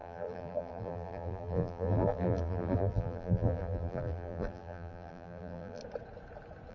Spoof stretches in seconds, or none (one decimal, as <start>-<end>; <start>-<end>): 0.0-5.8